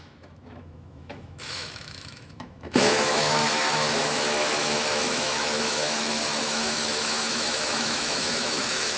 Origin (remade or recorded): remade